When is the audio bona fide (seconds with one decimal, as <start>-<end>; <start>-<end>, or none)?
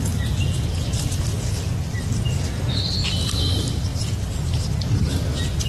0.0-3.9; 5.1-5.7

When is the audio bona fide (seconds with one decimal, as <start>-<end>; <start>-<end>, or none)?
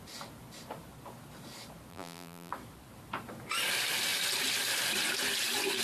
0.0-1.9; 2.5-5.8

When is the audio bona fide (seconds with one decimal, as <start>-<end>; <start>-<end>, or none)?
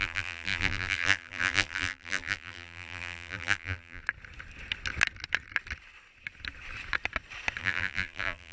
4.0-7.6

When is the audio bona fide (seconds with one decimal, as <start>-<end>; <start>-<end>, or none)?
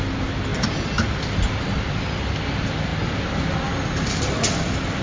0.0-5.0